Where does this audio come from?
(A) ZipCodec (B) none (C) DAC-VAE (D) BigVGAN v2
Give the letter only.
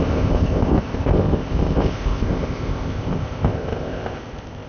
A